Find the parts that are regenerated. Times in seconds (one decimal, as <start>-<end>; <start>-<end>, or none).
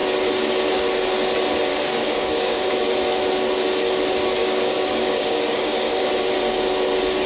1.7-2.7; 4.4-6.1